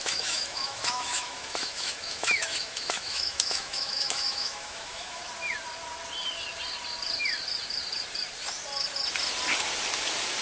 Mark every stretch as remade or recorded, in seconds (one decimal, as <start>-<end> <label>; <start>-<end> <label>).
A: 0.0-5.2 remade; 5.2-10.4 recorded